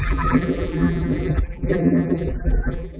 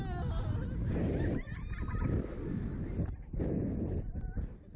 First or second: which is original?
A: second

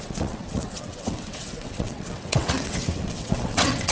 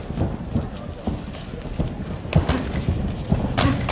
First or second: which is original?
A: second